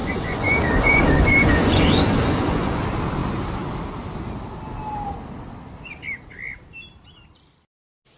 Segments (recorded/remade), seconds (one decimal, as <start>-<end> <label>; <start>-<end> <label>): 0.0-2.8 remade; 2.8-8.2 recorded

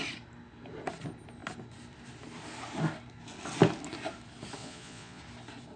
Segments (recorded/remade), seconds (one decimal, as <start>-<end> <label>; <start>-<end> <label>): 0.0-4.6 recorded; 4.6-5.2 remade; 5.2-5.8 recorded

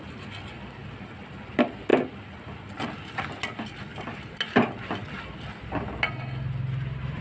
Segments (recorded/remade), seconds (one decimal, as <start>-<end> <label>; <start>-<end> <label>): 0.0-7.2 recorded